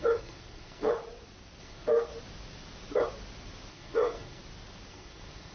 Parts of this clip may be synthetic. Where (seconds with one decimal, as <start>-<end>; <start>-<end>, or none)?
0.0-0.9; 1.6-2.1; 3.7-4.4; 4.9-5.5